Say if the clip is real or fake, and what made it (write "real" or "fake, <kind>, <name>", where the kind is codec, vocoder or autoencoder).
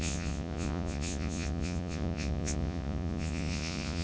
fake, vocoder, Vocos